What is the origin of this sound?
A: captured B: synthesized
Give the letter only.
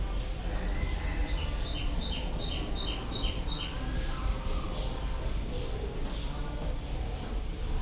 A